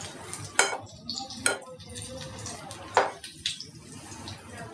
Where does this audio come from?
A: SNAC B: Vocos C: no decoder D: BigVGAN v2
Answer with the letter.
C